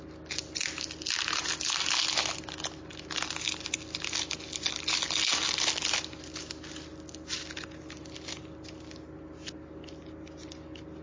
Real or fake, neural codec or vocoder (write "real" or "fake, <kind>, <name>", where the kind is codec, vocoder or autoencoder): real